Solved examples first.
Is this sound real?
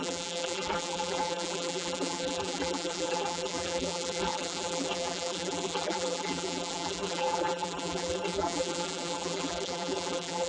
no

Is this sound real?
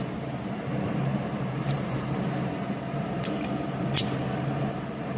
no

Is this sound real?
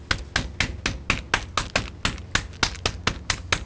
yes